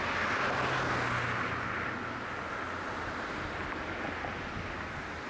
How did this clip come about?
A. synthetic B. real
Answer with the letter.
B